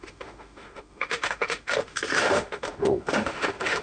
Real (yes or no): no